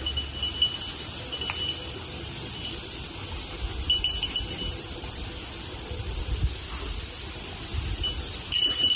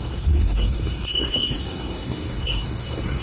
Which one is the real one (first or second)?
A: first